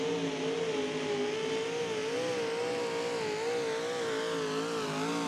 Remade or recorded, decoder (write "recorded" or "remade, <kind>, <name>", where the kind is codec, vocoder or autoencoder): recorded